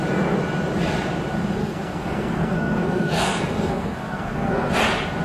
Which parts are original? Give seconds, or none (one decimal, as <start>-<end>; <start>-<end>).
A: 0.0-1.6; 4.7-5.2